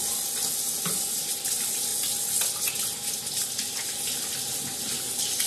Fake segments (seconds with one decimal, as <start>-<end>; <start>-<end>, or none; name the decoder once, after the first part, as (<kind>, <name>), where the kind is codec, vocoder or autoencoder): none